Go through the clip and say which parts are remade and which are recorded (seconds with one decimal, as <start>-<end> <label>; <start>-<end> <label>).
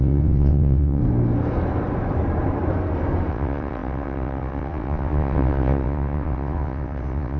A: 0.0-1.0 remade; 1.0-3.3 recorded; 3.3-7.4 remade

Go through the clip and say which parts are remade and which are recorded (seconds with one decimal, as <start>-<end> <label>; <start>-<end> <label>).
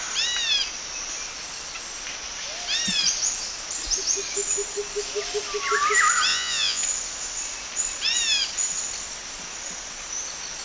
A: 0.0-6.3 recorded; 6.3-6.8 remade; 6.8-10.6 recorded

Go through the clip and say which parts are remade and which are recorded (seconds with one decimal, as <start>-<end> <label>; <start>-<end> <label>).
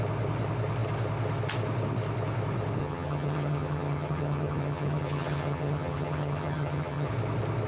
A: 0.0-2.8 recorded; 2.8-7.1 remade; 7.1-7.7 recorded